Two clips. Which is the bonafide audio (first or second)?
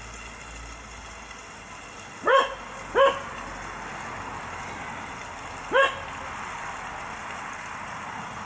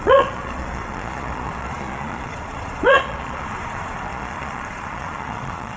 first